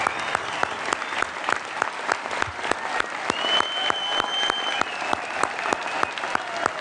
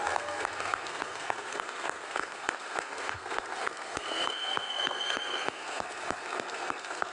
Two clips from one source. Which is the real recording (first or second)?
first